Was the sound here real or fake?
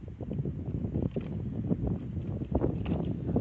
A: real